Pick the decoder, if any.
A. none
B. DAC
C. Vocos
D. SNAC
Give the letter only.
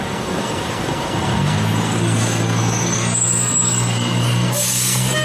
D